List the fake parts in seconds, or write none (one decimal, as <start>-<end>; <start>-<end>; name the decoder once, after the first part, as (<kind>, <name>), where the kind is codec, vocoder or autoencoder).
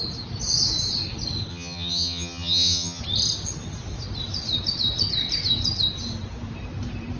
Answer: 1.5-3.0 (vocoder, HiFi-GAN)